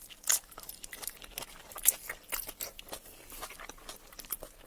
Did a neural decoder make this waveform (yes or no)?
no